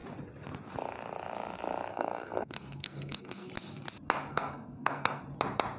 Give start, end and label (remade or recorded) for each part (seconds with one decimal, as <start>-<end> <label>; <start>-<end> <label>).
0.0-1.9 recorded; 1.9-3.5 remade; 3.5-4.3 recorded; 4.3-5.2 remade; 5.2-5.8 recorded